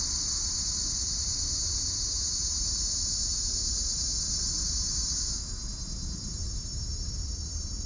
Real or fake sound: real